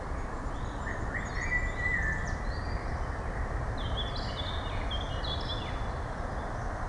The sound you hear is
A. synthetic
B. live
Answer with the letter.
B